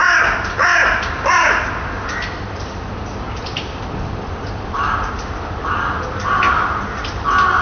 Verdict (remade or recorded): recorded